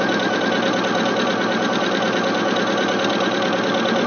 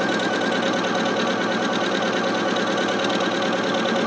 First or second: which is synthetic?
first